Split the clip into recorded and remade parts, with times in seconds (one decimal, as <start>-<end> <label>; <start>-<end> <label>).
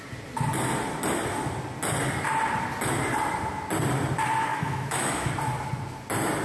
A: 0.0-4.5 recorded; 4.5-5.3 remade; 5.3-6.4 recorded